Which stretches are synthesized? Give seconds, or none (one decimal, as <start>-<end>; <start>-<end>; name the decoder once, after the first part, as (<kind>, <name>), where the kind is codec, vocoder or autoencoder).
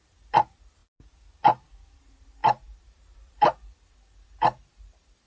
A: 0.0-0.8 (vocoder, BigVGAN v2); 2.0-5.3